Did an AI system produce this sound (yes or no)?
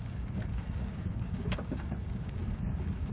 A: yes